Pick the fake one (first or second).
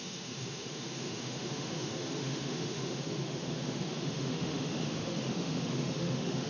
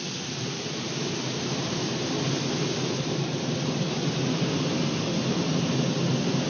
first